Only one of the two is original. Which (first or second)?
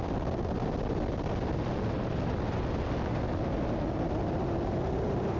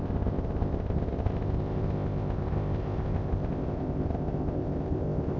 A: first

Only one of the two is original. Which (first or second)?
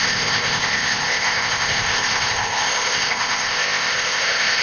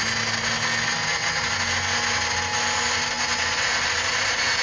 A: second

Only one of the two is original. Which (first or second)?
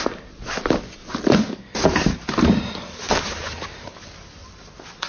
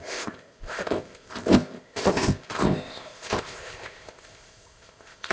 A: first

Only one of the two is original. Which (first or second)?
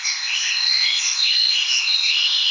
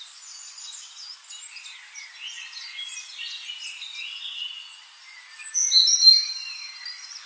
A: second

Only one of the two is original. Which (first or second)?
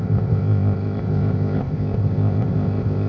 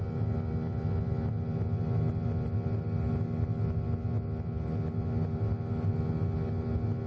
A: second